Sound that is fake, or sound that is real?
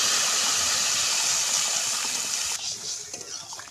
real